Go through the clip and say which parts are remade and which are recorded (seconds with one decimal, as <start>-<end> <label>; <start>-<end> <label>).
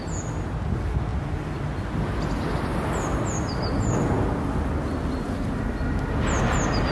0.0-6.9 recorded